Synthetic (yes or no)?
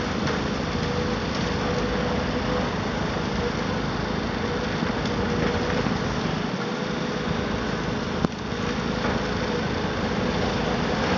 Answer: no